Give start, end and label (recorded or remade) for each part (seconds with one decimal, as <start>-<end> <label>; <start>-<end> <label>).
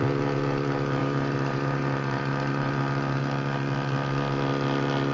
0.0-1.0 recorded; 1.0-2.7 remade; 2.7-5.1 recorded